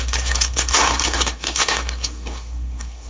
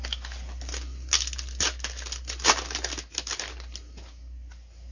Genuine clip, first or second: second